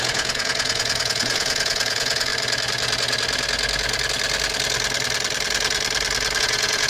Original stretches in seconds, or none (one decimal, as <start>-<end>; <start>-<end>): 2.3-6.4